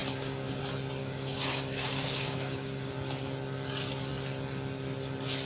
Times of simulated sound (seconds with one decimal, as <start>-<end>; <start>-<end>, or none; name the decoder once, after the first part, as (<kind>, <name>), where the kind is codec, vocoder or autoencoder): 0.0-0.6 (codec, DAC); 1.0-2.9